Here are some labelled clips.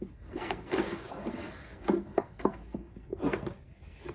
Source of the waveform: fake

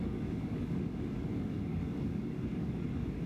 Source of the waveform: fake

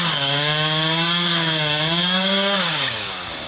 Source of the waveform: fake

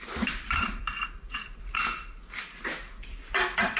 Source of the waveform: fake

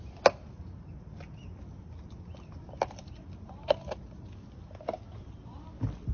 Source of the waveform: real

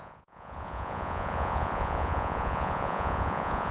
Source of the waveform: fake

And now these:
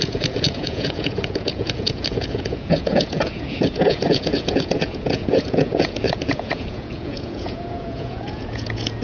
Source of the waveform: fake